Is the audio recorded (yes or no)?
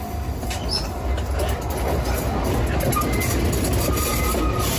yes